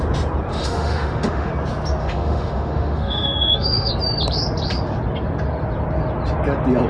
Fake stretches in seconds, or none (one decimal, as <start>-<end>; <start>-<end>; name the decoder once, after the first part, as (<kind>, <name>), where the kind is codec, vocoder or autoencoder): 0.5-1.5 (autoencoder, DAC-VAE); 2.0-3.9

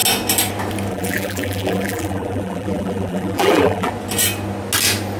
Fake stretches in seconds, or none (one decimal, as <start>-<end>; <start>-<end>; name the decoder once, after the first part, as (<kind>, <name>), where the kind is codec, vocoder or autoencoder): 0.9-3.9 (vocoder, BigVGAN v2)

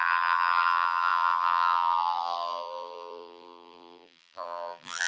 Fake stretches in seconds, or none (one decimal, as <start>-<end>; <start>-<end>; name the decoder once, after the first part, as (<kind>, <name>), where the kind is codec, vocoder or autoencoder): 0.0-5.1 (vocoder, BigVGAN v2)

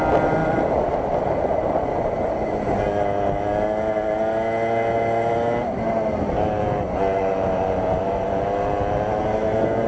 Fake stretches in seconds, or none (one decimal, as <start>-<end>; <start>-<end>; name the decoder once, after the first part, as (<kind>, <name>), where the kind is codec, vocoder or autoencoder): 7.3-8.4 (vocoder, BigVGAN v2)

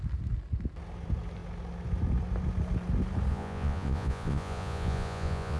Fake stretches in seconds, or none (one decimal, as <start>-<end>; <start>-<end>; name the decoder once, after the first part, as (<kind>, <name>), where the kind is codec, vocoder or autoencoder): 3.3-5.6 (vocoder, Vocos)